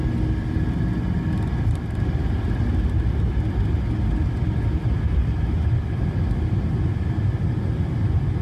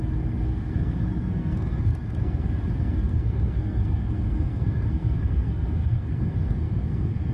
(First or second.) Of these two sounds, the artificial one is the second